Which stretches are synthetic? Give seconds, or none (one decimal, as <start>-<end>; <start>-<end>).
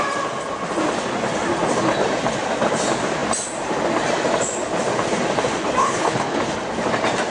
5.8-6.4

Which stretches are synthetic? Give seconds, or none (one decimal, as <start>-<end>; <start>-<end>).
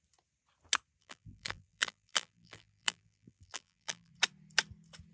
1.0-4.1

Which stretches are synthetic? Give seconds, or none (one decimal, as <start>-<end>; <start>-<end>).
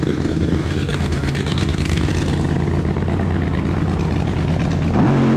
0.0-2.1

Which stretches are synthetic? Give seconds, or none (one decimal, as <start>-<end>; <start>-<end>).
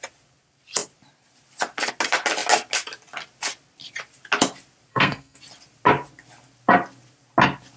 4.9-5.4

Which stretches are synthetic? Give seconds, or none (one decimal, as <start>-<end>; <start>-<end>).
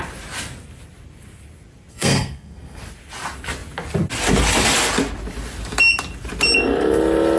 1.9-2.8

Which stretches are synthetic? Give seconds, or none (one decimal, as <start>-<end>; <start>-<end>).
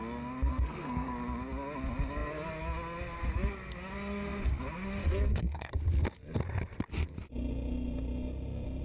0.5-1.1; 5.0-5.7